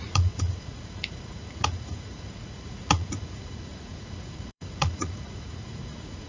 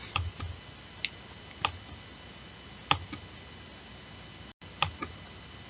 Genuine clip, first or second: second